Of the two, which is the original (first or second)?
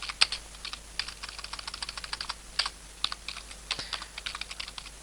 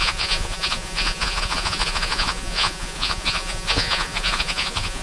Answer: first